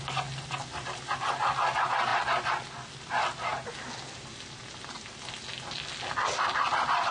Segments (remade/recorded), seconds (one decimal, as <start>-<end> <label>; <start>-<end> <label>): 0.0-7.1 recorded